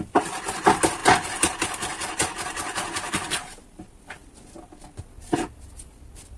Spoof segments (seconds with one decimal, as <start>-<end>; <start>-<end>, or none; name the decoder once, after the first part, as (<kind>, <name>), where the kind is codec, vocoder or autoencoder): none

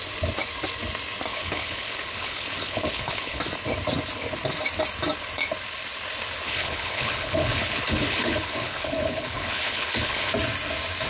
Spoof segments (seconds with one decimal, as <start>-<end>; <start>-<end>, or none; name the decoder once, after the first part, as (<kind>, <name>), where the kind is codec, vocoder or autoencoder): 1.3-3.4 (codec, HILCodec); 6.4-10.3